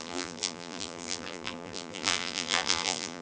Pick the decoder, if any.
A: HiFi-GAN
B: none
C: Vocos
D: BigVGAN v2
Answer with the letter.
D